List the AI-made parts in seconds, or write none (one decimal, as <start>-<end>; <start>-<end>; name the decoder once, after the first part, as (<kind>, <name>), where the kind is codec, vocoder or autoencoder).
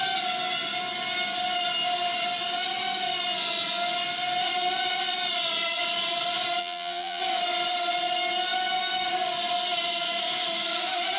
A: 6.6-7.2 (vocoder, BigVGAN v2)